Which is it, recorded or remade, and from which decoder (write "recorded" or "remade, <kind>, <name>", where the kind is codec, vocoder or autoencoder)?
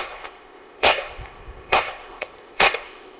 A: remade, codec, ZipCodec